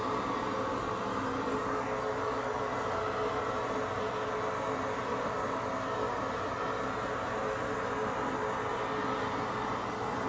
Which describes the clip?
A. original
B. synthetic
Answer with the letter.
A